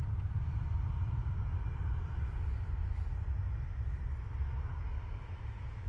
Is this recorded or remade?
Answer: recorded